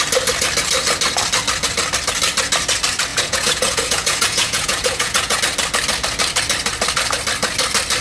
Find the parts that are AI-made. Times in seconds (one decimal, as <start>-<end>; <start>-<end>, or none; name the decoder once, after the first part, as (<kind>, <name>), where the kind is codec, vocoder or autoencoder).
3.1-5.4 (vocoder, Vocos)